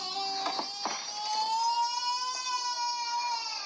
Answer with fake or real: real